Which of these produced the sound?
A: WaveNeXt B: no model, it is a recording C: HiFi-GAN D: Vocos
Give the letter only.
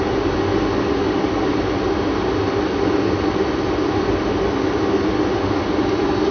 B